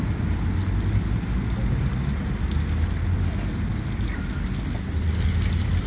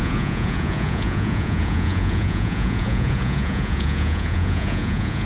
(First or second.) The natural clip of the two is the first